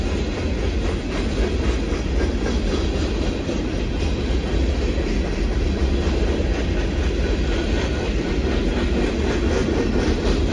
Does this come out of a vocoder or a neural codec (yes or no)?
no